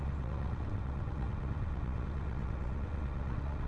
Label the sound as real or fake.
fake